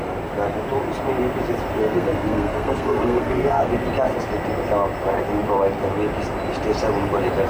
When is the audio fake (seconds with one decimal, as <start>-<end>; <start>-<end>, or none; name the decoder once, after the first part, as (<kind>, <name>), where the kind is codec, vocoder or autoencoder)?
1.8-3.7 (codec, SNAC)